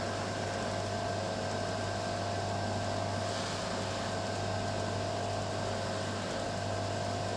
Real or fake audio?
real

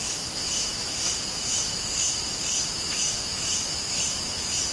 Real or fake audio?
fake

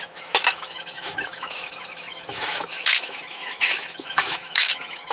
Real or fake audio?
fake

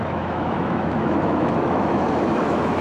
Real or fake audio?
fake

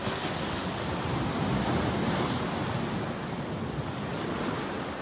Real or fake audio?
real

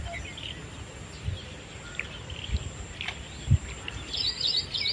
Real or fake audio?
real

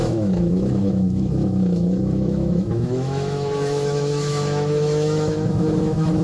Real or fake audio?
fake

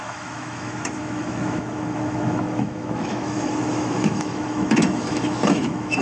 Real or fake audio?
fake